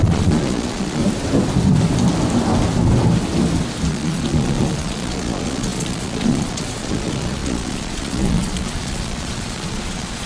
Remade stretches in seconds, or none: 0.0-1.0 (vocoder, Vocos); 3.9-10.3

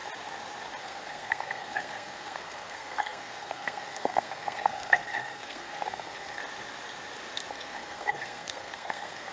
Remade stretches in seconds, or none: 0.8-6.4 (codec, SNAC); 7.5-9.3

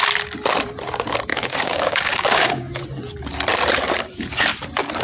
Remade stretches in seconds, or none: 1.3-2.8 (codec, DAC)

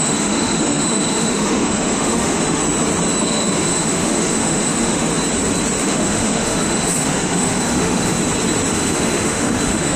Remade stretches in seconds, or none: 0.0-2.6 (autoencoder, DAC-VAE); 3.2-5.1; 5.8-8.2; 8.7-10.0

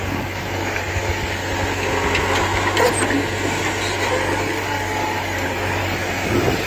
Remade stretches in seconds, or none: 0.0-1.4 (codec, DAC); 4.1-6.7

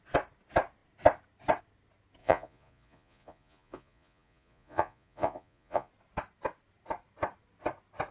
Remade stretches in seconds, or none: 2.2-5.9 (vocoder, Vocos)